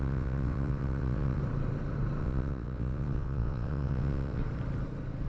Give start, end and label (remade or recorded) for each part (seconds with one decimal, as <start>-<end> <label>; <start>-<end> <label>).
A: 0.0-1.4 remade; 1.4-2.2 recorded; 2.2-4.4 remade; 4.4-5.3 recorded